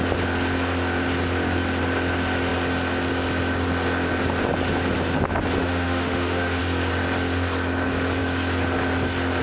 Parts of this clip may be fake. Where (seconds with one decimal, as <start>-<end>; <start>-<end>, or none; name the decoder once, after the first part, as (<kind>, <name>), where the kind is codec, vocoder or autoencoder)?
5.6-6.6 (autoencoder, DAC-VAE)